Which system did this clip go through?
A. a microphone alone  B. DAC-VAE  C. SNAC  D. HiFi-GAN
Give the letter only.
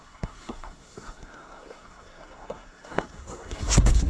C